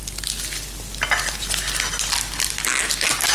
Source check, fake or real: real